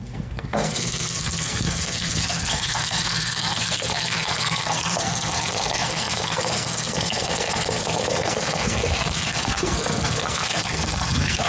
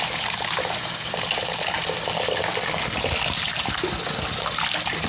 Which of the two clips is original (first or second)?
second